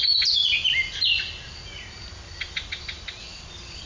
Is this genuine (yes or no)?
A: yes